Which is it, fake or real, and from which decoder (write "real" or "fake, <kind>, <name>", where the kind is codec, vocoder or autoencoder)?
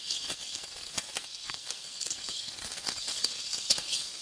fake, codec, SNAC